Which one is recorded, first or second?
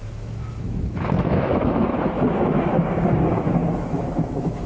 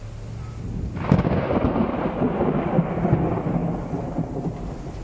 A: second